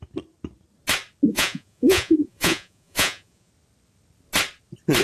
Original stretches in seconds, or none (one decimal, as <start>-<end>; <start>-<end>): 0.0-1.3; 3.5-5.0